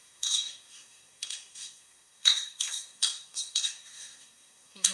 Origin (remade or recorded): remade